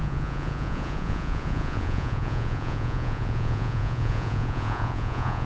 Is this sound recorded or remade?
remade